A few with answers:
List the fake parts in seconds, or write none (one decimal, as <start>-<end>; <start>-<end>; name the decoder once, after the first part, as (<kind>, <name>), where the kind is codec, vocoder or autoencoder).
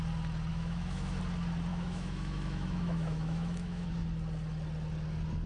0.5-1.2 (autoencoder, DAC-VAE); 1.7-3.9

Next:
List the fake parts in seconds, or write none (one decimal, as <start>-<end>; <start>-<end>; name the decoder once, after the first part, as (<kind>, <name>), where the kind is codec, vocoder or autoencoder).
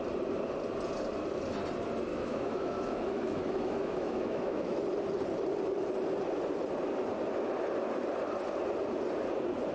2.1-4.8 (autoencoder, DAC-VAE)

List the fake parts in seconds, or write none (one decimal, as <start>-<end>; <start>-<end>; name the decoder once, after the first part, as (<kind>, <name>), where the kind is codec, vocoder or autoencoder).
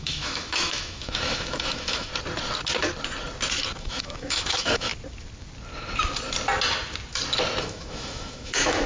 0.0-2.1 (autoencoder, DAC-VAE); 3.8-4.9; 7.6-8.9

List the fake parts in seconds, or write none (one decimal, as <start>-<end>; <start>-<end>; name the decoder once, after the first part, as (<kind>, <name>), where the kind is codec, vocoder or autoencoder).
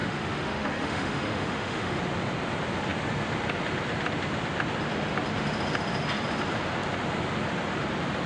0.0-2.0 (autoencoder, DAC-VAE)